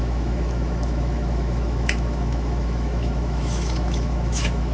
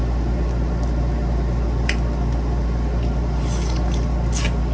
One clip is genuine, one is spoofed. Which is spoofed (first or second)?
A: first